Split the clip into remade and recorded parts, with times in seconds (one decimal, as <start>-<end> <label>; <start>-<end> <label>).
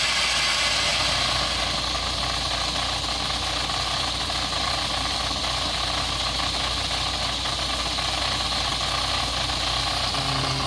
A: 0.0-10.7 recorded